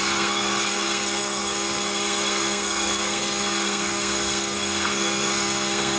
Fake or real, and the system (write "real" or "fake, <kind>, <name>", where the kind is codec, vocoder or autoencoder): fake, codec, SNAC